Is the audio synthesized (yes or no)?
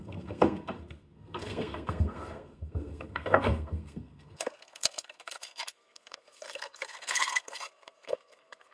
yes